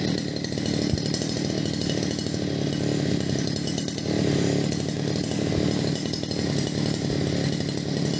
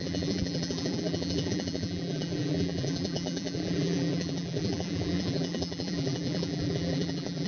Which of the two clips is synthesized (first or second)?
second